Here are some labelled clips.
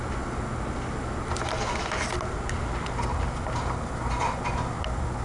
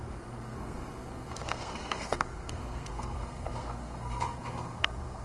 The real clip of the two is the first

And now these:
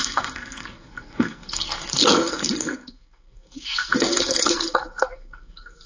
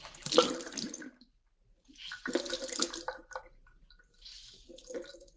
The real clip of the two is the second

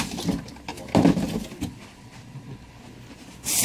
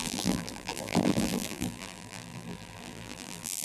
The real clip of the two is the first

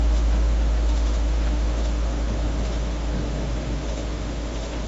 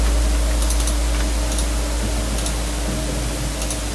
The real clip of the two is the second